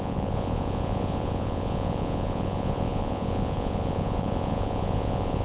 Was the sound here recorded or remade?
remade